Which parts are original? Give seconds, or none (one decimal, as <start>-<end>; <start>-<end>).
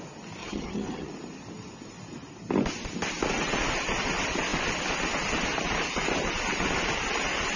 0.0-0.4; 1.1-7.6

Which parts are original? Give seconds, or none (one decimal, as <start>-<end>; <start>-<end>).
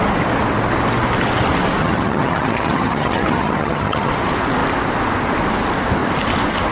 0.0-1.8; 4.1-6.7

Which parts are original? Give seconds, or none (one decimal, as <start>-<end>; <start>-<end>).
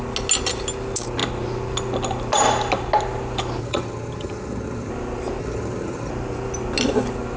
0.0-3.6; 4.9-5.4; 6.1-7.4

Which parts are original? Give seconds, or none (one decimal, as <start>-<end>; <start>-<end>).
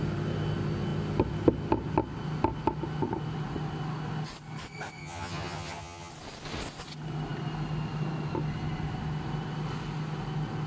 0.0-5.0; 6.1-10.7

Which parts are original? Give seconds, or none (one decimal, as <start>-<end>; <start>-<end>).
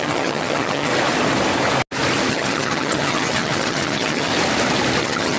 0.9-2.3; 4.3-5.0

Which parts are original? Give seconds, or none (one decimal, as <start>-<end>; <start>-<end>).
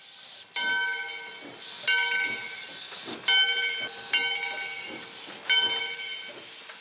0.0-6.8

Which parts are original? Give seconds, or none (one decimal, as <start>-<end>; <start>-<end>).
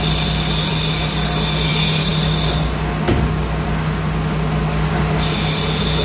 0.0-6.0